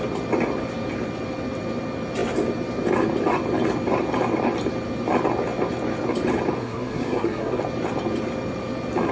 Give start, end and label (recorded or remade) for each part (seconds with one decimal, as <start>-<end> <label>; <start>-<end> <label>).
0.0-6.6 recorded; 6.6-7.6 remade; 7.6-9.1 recorded